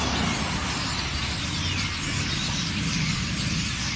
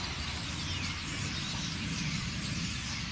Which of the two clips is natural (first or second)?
first